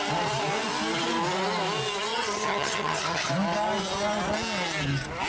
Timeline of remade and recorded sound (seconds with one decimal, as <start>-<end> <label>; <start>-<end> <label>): 0.0-2.1 recorded; 2.1-3.3 remade; 3.3-5.3 recorded